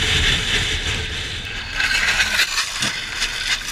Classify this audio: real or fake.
real